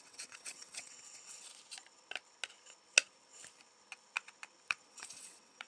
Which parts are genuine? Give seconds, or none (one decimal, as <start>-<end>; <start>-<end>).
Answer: 1.5-4.9